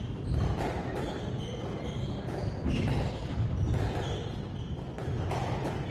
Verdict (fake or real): fake